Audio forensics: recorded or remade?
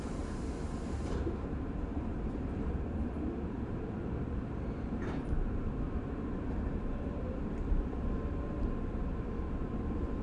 remade